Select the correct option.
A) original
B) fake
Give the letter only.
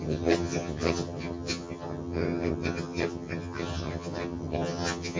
B